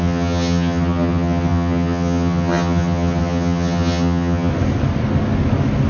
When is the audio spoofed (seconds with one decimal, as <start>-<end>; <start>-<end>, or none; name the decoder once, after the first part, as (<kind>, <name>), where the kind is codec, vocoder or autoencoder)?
0.0-4.5 (vocoder, HiFi-GAN)